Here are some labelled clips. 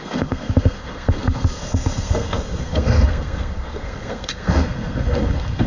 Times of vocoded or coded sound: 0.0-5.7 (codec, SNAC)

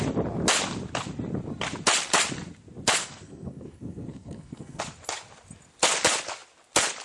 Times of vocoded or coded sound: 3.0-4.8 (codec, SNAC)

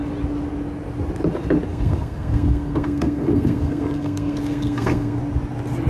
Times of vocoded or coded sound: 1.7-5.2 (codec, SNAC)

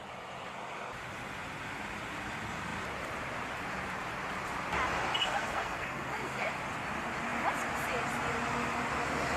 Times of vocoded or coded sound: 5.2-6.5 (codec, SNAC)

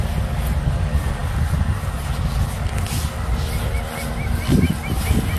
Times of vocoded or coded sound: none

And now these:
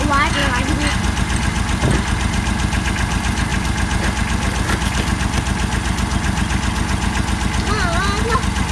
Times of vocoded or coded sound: none